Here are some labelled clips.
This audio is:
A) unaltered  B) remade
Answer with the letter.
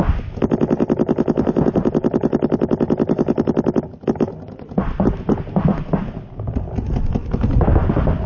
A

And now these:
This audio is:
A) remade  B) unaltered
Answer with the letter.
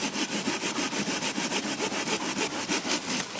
B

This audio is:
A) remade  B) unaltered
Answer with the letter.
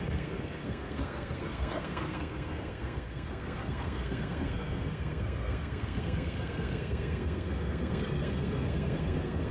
A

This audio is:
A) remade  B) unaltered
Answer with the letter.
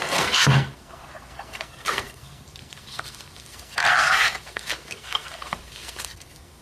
A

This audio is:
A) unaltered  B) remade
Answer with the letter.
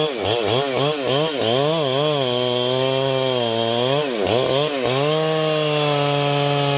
A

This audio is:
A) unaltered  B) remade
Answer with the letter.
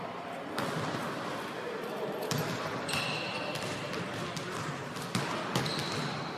A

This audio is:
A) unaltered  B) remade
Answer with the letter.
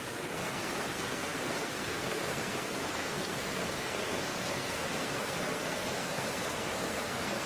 B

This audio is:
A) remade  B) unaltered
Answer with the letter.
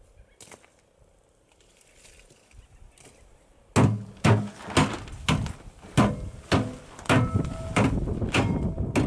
B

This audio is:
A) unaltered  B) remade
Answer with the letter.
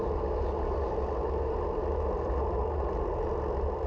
A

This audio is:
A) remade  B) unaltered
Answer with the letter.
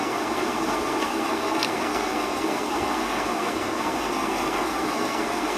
A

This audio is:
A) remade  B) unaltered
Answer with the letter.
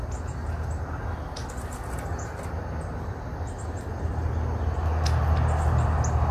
B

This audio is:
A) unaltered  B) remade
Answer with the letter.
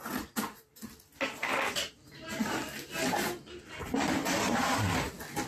A